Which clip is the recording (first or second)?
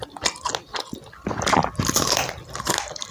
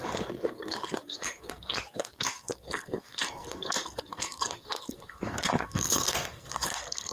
first